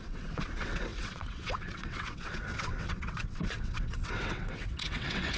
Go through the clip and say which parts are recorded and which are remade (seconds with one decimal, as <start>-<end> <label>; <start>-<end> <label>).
0.0-5.4 remade